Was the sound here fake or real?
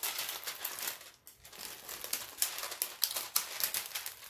real